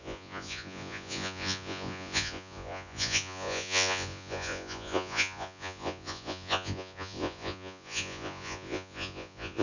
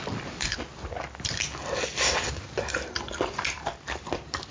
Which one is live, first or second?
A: second